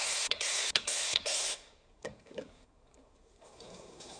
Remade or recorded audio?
remade